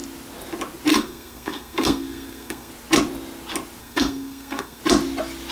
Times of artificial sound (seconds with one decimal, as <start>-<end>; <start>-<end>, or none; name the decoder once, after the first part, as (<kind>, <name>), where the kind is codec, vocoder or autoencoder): 0.9-2.7 (codec, SNAC); 3.8-4.8

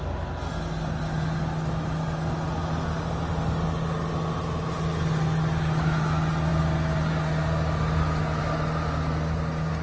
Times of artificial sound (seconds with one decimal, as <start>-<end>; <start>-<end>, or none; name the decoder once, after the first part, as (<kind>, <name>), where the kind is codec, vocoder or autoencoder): none